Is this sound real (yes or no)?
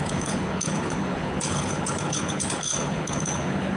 no